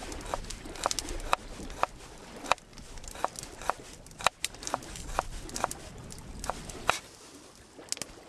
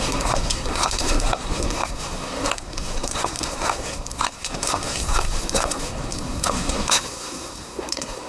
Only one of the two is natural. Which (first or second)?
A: first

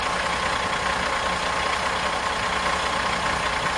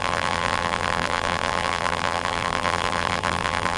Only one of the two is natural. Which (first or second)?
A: first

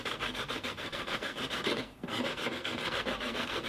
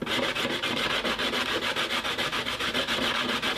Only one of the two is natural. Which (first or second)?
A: second